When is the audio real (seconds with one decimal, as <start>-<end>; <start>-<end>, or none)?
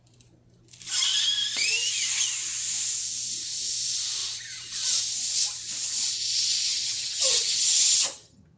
0.0-6.7